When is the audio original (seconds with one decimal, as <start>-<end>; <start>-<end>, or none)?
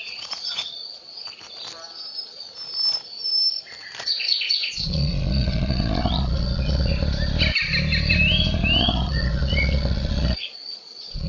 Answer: 0.8-4.0; 6.9-8.8